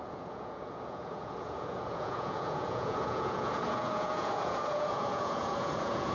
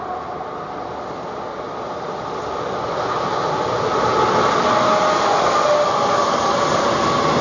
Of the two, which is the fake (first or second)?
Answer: first